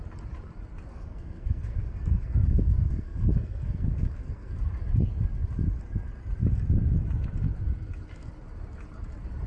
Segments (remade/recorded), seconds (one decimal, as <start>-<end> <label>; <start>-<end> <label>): 0.0-0.9 recorded; 0.9-4.5 remade; 4.5-9.5 recorded